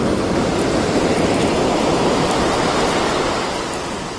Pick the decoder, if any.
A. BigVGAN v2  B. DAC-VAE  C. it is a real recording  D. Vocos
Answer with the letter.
C